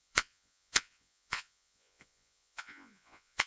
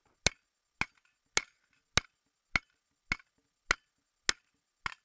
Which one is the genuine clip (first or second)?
second